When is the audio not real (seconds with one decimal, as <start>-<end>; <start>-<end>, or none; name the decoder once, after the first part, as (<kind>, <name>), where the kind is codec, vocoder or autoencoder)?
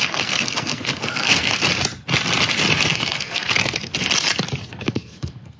0.0-1.6 (codec, SNAC); 2.9-3.9; 4.6-5.6